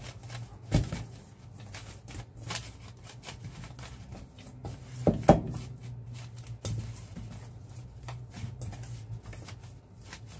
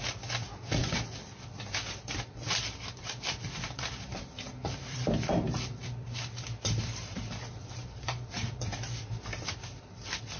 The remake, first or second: second